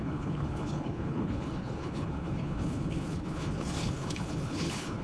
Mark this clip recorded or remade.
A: remade